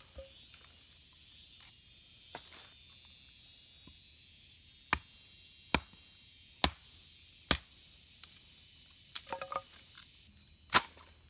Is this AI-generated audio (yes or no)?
no